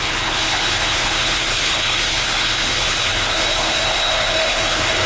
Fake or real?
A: fake